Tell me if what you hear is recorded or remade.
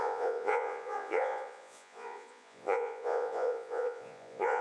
remade